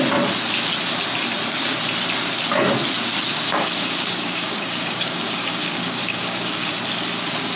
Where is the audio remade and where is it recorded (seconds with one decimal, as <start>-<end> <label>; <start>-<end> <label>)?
0.0-3.3 recorded; 3.3-6.8 remade; 6.8-7.6 recorded